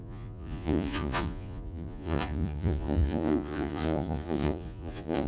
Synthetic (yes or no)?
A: yes